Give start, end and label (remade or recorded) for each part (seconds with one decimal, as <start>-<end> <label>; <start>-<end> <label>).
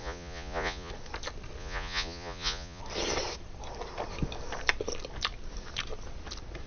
0.0-0.9 remade; 0.9-1.6 recorded; 1.6-2.8 remade; 2.8-6.7 recorded